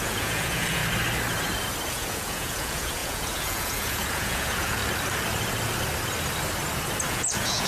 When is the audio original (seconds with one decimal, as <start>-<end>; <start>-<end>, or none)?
0.8-1.9; 4.8-7.1